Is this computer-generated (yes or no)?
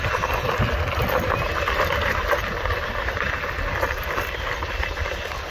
no